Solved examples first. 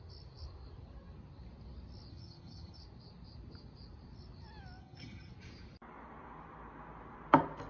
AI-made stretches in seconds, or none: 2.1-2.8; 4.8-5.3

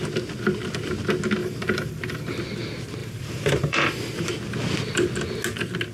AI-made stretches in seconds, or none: 1.4-2.4; 3.0-4.3

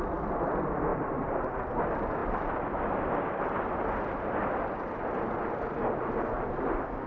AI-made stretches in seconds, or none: 0.9-1.5

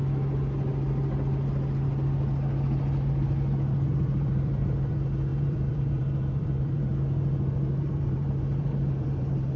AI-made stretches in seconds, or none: 3.9-6.9; 7.8-9.6

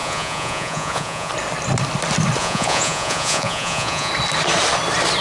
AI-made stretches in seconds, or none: 0.0-1.3; 2.4-4.1

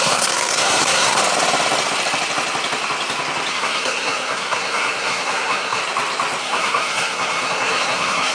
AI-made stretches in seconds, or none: 0.0-1.2; 3.5-5.8; 6.4-8.3

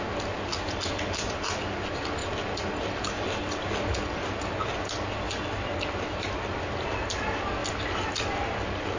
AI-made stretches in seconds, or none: none

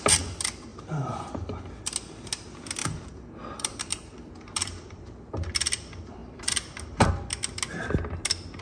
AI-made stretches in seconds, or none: 0.7-1.3; 2.8-5.3; 6.2-7.1